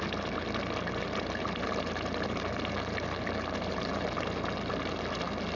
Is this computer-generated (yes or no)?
no